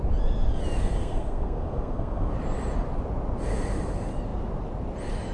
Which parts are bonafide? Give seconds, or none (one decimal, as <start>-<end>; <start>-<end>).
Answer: 0.0-1.0; 2.3-5.3